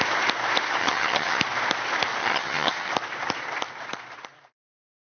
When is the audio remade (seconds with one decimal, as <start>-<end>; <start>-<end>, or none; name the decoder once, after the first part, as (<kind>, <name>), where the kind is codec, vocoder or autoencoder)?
0.8-1.4 (vocoder, HiFi-GAN); 2.2-2.9